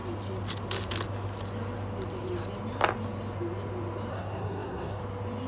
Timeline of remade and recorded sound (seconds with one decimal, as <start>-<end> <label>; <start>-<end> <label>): 0.0-4.1 recorded; 4.1-5.0 remade; 5.0-5.5 recorded